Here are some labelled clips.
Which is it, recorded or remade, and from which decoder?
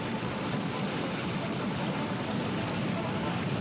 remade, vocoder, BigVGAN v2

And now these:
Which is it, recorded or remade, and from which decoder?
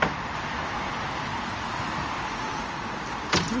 recorded